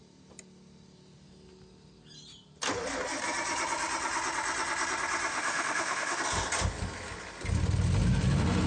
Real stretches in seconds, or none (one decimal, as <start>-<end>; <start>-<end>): 0.0-5.3; 6.2-8.7